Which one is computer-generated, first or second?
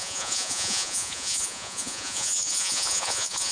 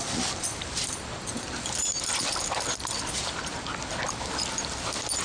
first